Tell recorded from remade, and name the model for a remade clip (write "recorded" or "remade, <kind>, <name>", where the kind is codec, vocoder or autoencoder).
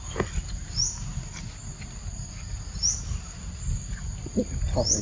recorded